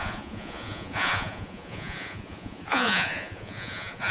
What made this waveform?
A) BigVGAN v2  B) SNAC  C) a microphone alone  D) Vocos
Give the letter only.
D